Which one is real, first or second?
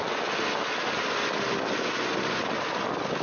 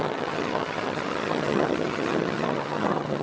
first